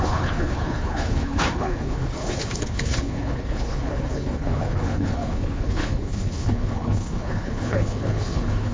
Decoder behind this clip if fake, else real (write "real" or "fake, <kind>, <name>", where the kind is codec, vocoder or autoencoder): fake, codec, HILCodec